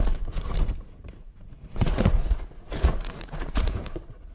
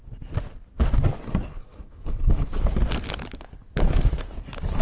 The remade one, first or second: first